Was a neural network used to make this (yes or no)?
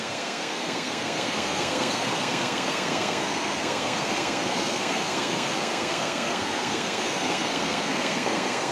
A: yes